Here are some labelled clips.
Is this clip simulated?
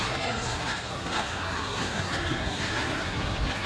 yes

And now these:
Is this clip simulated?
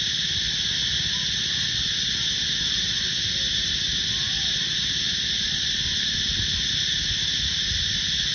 no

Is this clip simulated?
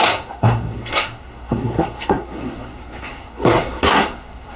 yes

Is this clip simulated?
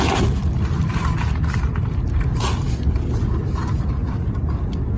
no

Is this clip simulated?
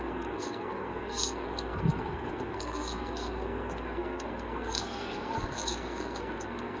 yes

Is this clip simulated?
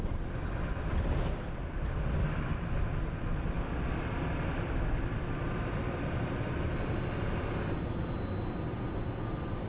no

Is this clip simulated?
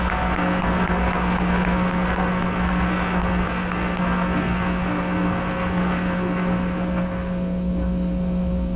yes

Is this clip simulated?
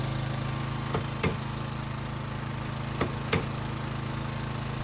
no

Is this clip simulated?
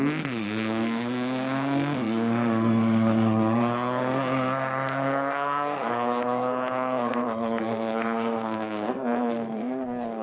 yes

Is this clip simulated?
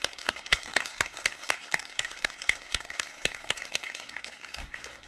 yes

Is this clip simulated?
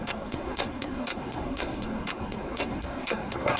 yes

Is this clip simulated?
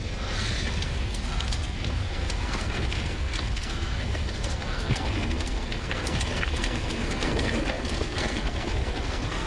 yes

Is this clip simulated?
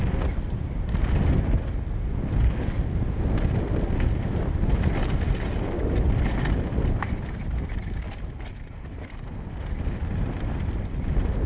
no